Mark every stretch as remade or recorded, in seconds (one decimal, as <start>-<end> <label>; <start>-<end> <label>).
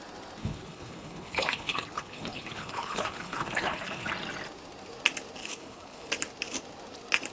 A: 0.0-0.4 recorded; 0.4-4.1 remade; 4.1-5.4 recorded; 5.4-6.1 remade; 6.1-7.3 recorded